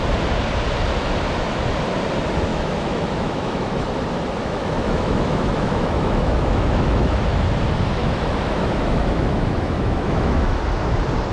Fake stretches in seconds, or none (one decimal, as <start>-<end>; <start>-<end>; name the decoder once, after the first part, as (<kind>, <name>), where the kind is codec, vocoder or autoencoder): 2.5-3.9 (autoencoder, DAC-VAE); 4.4-7.2; 8.0-10.6